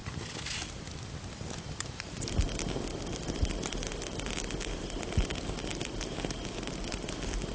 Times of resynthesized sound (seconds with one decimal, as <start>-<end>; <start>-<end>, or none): none